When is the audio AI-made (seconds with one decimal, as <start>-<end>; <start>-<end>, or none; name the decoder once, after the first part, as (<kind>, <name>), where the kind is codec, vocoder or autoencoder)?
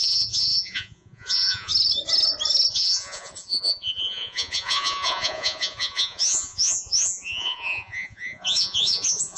0.0-1.7 (vocoder, Vocos); 2.7-9.4